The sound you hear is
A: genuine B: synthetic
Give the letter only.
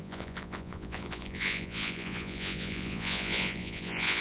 B